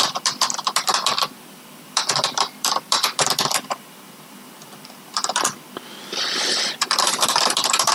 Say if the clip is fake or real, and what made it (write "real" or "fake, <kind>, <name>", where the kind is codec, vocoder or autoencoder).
fake, vocoder, BigVGAN v2